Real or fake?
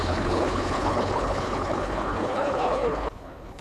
fake